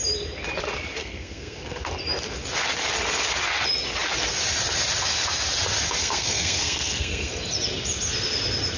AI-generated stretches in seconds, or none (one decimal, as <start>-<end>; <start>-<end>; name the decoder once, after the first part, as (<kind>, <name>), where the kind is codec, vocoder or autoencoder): 1.0-1.9 (codec, SNAC); 6.0-7.3